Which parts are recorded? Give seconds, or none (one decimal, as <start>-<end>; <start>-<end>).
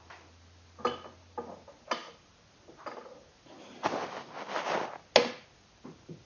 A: 0.0-6.3